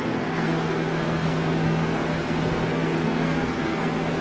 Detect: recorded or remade remade